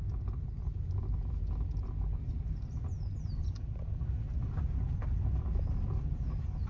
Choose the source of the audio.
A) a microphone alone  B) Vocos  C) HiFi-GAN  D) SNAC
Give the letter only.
A